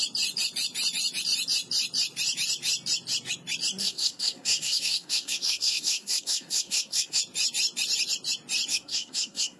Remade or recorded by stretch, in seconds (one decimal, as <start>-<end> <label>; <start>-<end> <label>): 0.0-3.8 recorded; 3.8-7.2 remade; 7.2-8.7 recorded; 8.7-9.6 remade